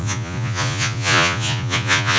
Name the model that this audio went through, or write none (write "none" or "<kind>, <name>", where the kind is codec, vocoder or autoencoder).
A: vocoder, Vocos